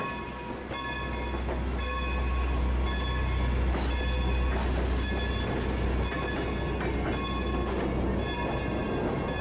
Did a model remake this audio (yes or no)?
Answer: no